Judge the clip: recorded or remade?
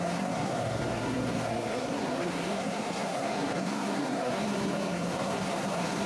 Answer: remade